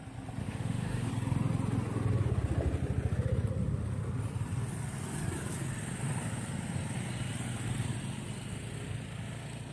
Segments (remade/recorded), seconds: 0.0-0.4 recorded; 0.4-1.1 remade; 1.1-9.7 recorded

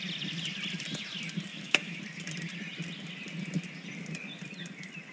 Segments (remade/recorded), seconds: 0.0-1.5 recorded; 1.5-2.0 remade; 2.0-5.1 recorded